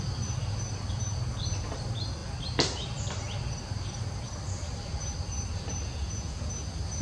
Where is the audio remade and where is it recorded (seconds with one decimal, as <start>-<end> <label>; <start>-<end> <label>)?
0.0-5.9 recorded; 5.9-6.5 remade; 6.5-7.0 recorded